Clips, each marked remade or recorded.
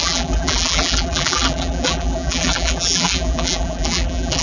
remade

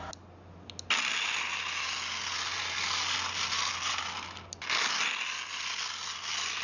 recorded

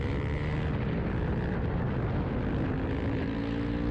recorded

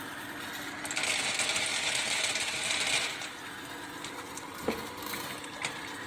recorded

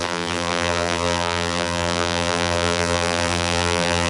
remade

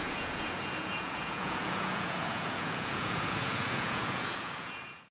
remade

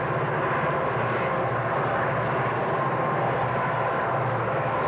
recorded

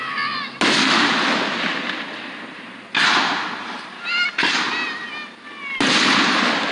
recorded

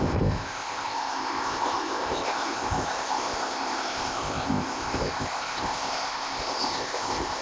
remade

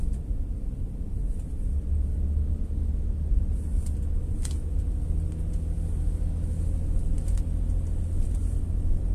recorded